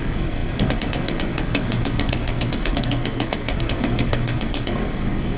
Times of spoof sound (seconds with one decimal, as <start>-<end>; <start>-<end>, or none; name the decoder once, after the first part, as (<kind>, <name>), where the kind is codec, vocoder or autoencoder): 0.0-5.4 (codec, SNAC)